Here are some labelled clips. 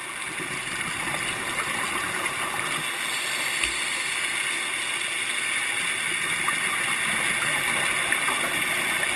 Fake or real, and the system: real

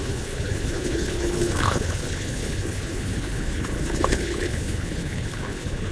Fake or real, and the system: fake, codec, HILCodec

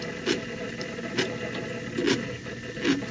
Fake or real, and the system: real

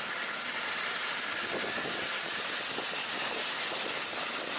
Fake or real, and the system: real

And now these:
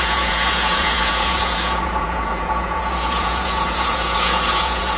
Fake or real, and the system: fake, vocoder, Vocos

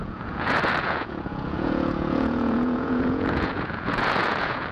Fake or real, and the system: fake, vocoder, Vocos